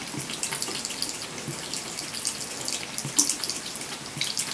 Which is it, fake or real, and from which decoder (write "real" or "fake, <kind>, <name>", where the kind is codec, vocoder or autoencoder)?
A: real